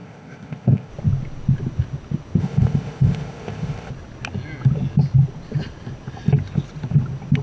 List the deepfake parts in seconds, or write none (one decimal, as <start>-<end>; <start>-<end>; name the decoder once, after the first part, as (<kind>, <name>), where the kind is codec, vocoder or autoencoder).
0.0-0.9 (codec, ZipCodec); 2.4-3.9